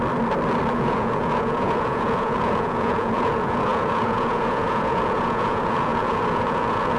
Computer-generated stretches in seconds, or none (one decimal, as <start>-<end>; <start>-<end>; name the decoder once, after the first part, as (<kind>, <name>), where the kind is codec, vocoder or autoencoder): 0.6-7.0 (vocoder, Vocos)